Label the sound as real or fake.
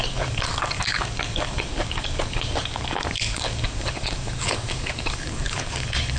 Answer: fake